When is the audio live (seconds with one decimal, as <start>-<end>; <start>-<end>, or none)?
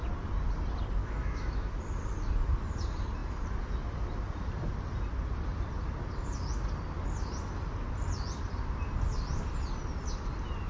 0.0-1.0; 1.8-10.7